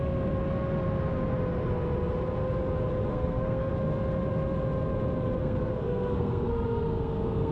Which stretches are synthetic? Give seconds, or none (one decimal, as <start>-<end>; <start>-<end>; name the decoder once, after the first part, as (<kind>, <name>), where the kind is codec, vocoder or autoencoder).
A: 3.1-3.7 (codec, SNAC); 5.4-7.5

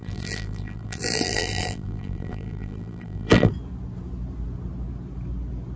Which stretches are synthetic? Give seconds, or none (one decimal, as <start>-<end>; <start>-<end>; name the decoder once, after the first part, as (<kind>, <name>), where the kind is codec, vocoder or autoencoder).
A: 0.0-3.5 (vocoder, BigVGAN v2)

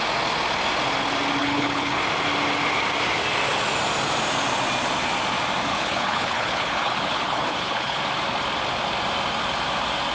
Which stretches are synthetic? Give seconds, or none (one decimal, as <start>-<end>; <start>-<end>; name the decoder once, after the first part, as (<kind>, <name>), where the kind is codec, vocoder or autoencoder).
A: 1.4-2.0 (codec, HILCodec); 5.7-8.0

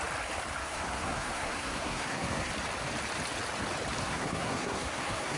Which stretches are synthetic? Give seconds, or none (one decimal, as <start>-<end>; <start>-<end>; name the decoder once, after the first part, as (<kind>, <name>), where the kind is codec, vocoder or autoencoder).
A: 0.6-2.5 (codec, SNAC); 4.0-5.4